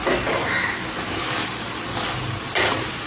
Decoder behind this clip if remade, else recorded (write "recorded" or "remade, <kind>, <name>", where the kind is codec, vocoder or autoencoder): recorded